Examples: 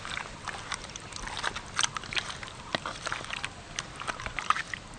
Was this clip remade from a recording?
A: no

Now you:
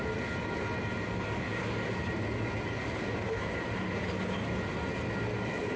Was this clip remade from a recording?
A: no